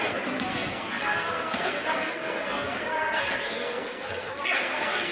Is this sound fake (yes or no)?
yes